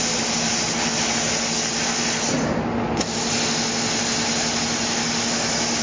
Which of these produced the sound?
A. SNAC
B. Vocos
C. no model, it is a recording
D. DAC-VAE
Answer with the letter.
C